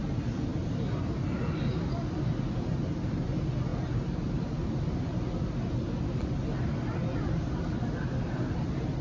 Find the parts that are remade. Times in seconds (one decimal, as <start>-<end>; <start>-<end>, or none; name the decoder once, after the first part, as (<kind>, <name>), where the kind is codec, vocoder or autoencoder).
none